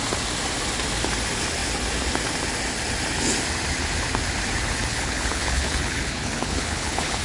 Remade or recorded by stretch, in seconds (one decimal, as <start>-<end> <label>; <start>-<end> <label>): 0.0-4.9 recorded; 4.9-7.2 remade